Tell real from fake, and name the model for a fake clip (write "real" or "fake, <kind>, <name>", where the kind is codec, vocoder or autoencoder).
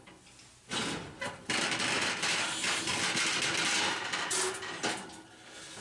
real